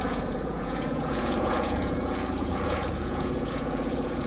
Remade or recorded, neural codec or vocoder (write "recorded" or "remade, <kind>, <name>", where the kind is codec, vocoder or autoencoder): remade, vocoder, Vocos